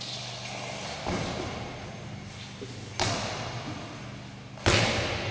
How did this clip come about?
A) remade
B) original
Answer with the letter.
B